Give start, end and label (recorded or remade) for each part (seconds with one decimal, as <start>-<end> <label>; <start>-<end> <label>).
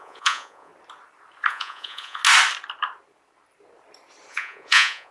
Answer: 0.0-0.7 remade; 0.7-1.5 recorded; 1.5-2.2 remade; 2.2-4.3 recorded; 4.3-5.1 remade